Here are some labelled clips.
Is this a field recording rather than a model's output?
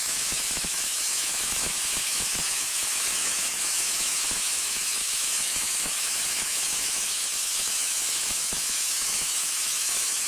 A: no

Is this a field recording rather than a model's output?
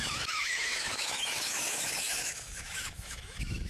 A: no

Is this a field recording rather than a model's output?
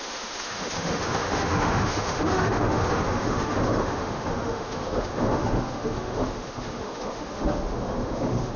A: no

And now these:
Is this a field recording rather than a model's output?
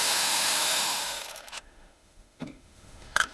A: no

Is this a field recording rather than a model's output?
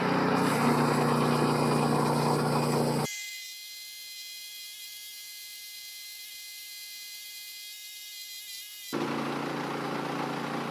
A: yes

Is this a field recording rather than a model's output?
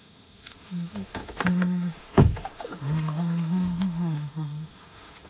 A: no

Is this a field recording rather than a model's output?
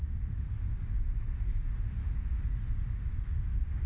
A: no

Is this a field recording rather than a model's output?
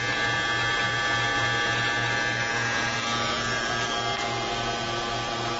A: yes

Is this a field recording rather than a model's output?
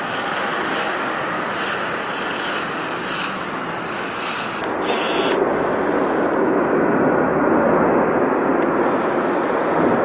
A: yes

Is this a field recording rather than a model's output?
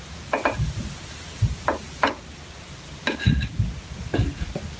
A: yes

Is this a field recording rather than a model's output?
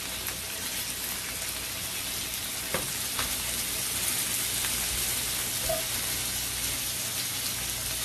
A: yes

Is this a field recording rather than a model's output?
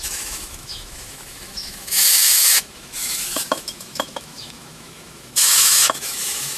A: no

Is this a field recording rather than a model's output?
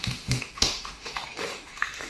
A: no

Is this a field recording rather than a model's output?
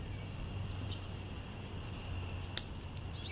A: yes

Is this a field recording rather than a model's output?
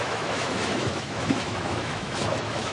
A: no